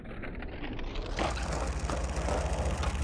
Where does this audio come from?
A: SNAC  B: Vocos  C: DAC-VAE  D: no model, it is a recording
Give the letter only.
D